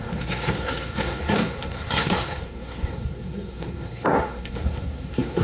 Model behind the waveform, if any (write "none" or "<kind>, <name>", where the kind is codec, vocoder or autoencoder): codec, SNAC